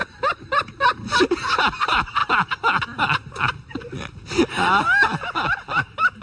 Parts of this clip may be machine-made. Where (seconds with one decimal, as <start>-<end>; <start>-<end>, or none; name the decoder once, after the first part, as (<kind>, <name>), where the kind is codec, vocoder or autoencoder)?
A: none